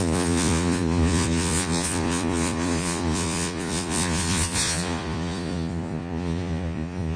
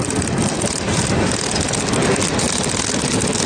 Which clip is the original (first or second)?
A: second